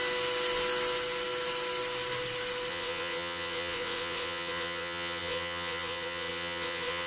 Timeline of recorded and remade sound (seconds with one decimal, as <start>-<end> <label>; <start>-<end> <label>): 0.0-2.7 recorded; 2.7-7.1 remade